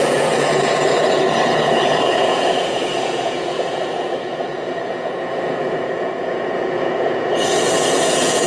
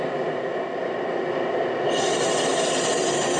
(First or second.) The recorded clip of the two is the second